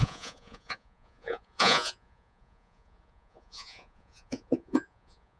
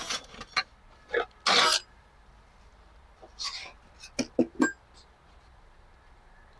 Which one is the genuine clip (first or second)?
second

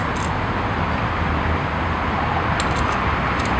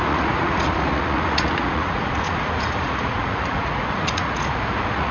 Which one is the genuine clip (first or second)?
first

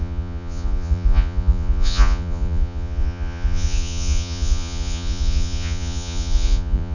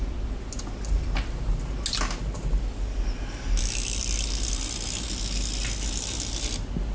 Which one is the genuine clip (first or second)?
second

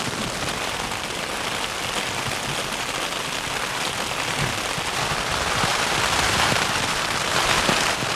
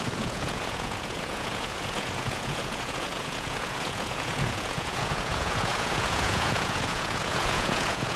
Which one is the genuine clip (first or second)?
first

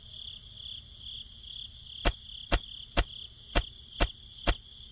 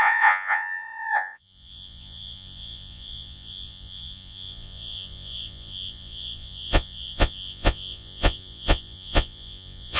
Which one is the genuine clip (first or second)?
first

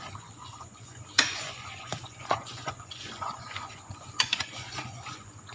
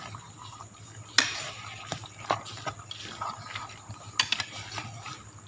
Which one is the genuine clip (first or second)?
second